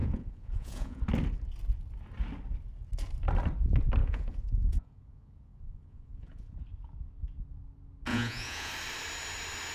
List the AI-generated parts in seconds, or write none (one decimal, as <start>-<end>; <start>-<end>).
0.0-1.0; 4.0-6.6; 8.1-8.7